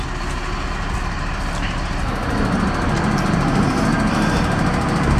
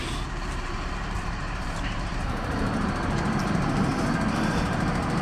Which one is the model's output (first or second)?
second